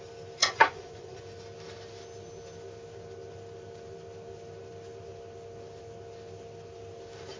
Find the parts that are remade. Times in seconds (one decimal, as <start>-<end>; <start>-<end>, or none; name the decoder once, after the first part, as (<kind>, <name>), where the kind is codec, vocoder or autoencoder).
0.4-1.2 (vocoder, Vocos)